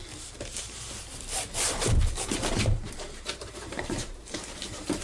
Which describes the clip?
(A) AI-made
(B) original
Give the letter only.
A